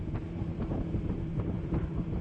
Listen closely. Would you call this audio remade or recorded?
remade